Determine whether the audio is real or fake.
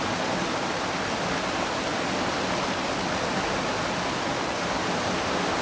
real